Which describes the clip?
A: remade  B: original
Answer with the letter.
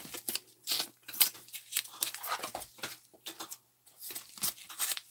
B